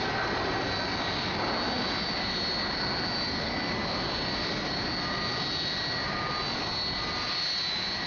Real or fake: real